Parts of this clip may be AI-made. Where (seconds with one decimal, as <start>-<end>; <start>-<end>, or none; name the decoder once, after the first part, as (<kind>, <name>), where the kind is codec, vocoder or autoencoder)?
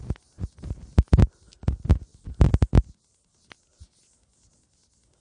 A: none